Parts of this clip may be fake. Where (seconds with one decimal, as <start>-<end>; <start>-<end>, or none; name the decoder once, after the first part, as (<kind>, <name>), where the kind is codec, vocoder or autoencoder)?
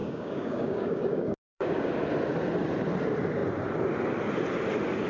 0.0-1.9 (codec, DAC)